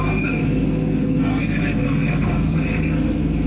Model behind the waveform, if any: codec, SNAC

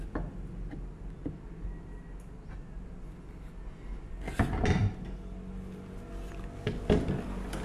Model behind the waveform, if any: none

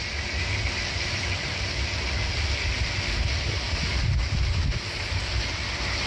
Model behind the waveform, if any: none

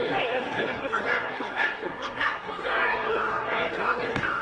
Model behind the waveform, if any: codec, SNAC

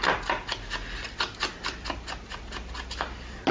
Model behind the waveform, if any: none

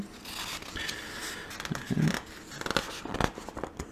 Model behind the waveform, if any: none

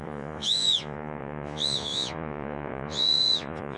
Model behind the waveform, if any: vocoder, Vocos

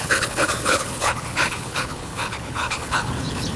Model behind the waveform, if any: codec, HILCodec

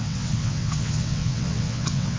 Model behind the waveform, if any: vocoder, WaveNeXt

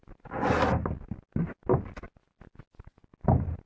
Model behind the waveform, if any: none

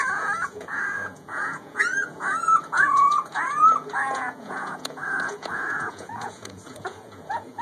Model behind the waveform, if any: vocoder, Vocos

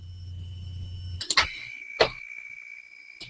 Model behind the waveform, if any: none